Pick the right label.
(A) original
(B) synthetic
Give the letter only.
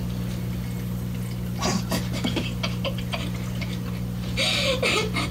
A